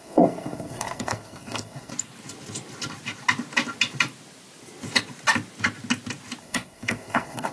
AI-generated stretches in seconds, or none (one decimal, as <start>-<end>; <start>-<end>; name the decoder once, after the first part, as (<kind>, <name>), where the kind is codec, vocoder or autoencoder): 0.0-1.9 (codec, SNAC); 6.4-7.5